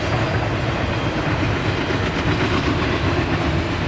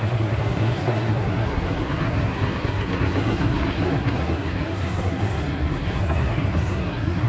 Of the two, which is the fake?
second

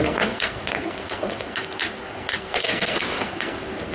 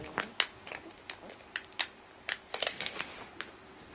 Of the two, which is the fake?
first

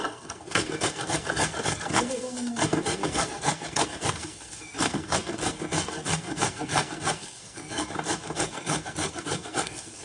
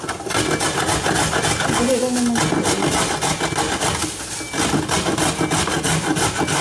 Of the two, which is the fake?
first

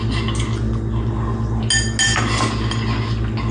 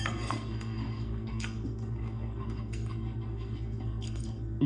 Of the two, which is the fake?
second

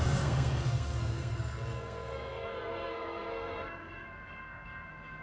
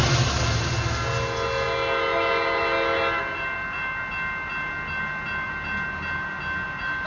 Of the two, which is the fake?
first